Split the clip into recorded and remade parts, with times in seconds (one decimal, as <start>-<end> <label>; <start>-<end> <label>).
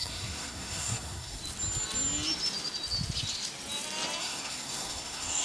0.0-1.4 remade; 1.4-4.2 recorded; 4.2-5.4 remade